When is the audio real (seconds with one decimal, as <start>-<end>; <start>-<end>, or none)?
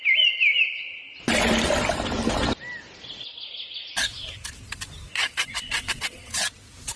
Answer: 0.0-5.1; 6.3-7.0